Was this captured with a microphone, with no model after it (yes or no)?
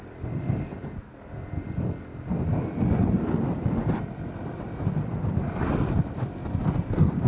yes